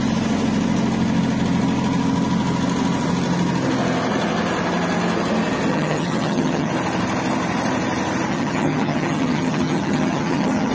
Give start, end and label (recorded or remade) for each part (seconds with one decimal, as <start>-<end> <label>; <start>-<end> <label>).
0.0-5.7 recorded; 5.7-6.7 remade; 6.7-8.3 recorded; 8.3-10.7 remade